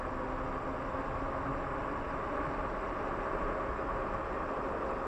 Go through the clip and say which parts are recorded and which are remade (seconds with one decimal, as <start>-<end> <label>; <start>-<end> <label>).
0.0-5.1 recorded